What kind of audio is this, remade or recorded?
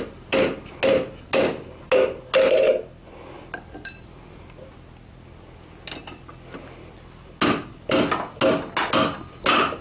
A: recorded